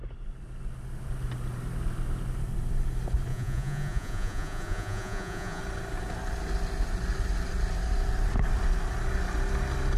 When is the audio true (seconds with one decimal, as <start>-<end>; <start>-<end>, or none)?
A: 0.0-3.3; 5.6-10.0